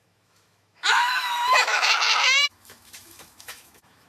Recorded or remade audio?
remade